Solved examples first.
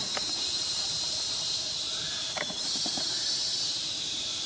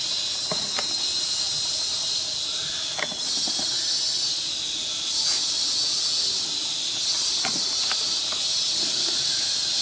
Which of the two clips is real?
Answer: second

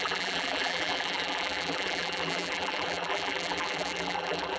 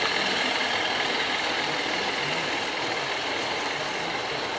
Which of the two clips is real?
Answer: second